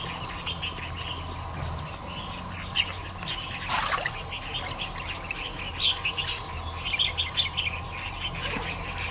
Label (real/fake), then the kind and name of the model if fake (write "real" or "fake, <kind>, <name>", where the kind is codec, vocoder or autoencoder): real